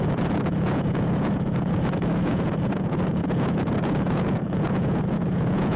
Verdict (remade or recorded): remade